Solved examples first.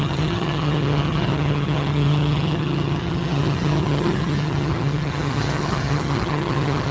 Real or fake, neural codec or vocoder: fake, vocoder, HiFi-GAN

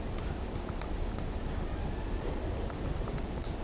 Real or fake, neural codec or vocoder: real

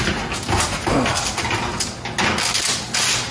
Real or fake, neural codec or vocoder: real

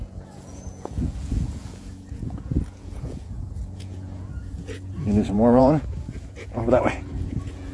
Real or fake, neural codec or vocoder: fake, vocoder, Vocos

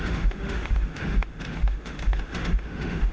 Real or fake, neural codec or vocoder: fake, autoencoder, DAC-VAE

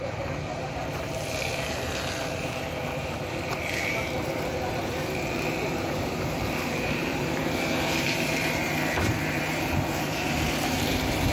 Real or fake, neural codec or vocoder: fake, vocoder, BigVGAN v2